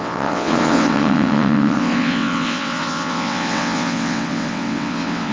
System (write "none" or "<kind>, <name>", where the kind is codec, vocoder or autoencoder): vocoder, WaveNeXt